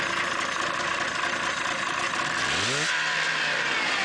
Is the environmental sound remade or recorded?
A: recorded